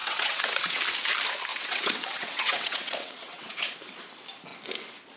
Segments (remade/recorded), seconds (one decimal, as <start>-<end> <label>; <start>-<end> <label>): 0.0-0.8 remade; 0.8-1.5 recorded; 1.5-3.7 remade; 3.7-5.2 recorded

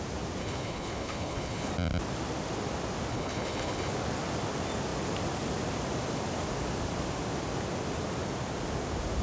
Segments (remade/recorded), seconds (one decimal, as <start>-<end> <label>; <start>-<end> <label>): 0.0-0.4 recorded; 0.4-1.7 remade; 1.7-3.1 recorded; 3.1-3.9 remade; 3.9-9.2 recorded